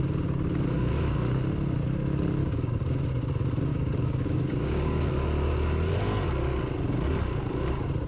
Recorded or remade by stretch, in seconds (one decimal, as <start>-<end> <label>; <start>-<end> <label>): 0.0-2.4 recorded; 2.4-2.9 remade; 2.9-3.7 recorded; 3.7-5.0 remade; 5.0-8.1 recorded